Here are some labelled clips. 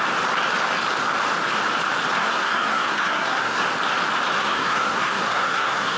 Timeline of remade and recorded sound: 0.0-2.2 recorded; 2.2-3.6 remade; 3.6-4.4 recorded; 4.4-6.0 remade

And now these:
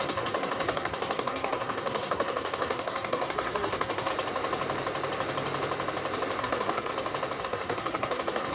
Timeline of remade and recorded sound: 0.0-4.1 remade; 4.1-6.4 recorded; 6.4-6.9 remade; 6.9-7.4 recorded; 7.4-8.5 remade

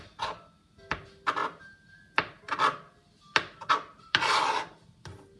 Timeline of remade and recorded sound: 0.0-5.4 recorded